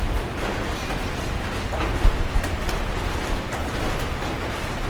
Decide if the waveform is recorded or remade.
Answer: recorded